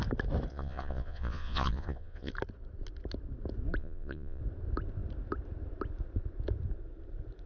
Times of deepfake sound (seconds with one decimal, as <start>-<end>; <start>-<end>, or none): 0.5-2.3; 3.8-4.4